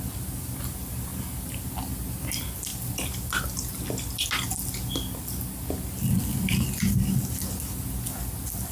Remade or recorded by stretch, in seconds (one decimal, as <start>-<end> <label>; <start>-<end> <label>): 0.0-8.7 recorded